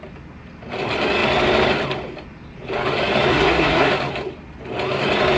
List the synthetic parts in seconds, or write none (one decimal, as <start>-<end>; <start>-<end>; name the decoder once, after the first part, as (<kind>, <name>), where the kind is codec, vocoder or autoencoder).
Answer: 3.3-3.9 (codec, SNAC)